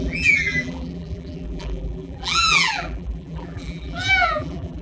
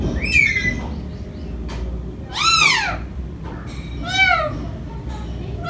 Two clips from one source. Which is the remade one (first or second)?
first